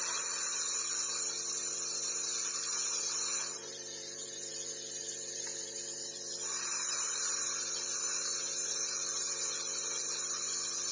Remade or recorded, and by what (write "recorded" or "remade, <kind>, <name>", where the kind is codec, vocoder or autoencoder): remade, vocoder, BigVGAN v2